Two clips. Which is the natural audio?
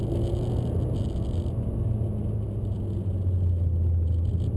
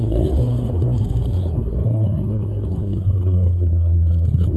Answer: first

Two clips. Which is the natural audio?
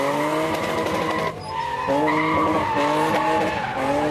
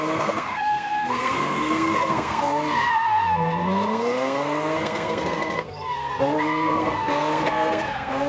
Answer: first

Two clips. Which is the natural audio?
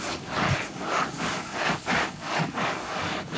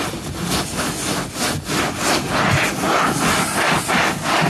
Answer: second